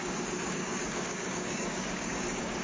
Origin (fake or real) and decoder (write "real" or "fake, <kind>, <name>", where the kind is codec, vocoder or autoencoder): fake, codec, DAC